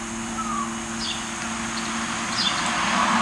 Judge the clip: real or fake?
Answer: real